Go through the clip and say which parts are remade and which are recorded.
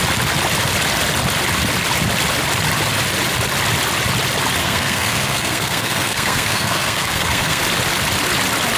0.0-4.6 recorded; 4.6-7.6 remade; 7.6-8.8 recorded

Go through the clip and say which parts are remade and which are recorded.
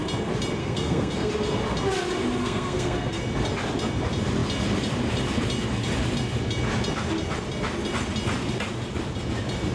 0.0-0.6 recorded; 0.6-1.3 remade; 1.3-2.4 recorded; 2.4-3.2 remade; 3.2-9.7 recorded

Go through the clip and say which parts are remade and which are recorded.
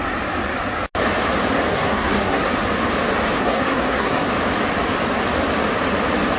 0.0-1.7 recorded; 1.7-2.5 remade; 2.5-3.4 recorded; 3.4-4.3 remade; 4.3-6.4 recorded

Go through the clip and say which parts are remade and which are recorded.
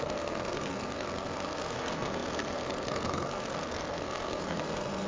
0.0-5.1 remade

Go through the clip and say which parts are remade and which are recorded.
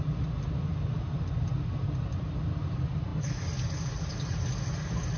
0.0-5.2 recorded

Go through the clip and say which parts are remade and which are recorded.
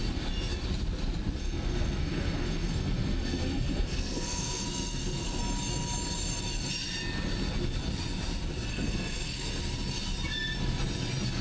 0.0-1.4 recorded; 1.4-5.4 remade; 5.4-8.7 recorded; 8.7-9.6 remade; 9.6-11.4 recorded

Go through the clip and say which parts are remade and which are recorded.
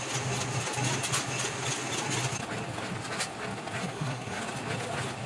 0.0-3.8 recorded; 3.8-4.4 remade; 4.4-5.3 recorded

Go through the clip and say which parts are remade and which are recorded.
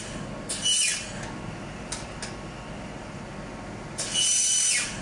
0.0-5.0 recorded